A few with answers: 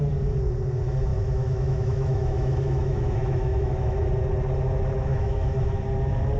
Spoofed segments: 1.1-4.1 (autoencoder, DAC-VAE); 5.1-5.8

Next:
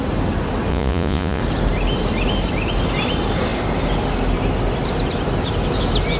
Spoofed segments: 0.7-1.4 (vocoder, Vocos)

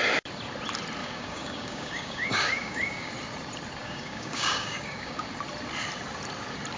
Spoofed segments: 1.0-3.1 (codec, DAC); 3.8-5.3

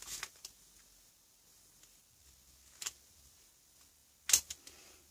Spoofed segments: none

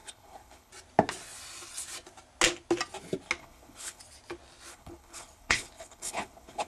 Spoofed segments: 0.0-0.7 (codec, HILCodec); 3.4-4.0; 4.7-6.7

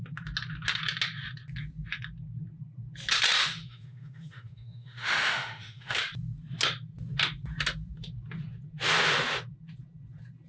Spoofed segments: 3.4-6.0 (autoencoder, DAC-VAE)

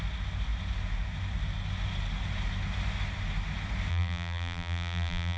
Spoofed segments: 3.9-5.4 (vocoder, BigVGAN v2)